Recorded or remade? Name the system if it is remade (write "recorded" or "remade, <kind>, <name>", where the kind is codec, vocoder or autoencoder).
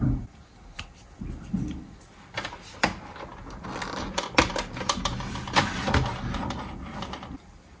remade, vocoder, BigVGAN v2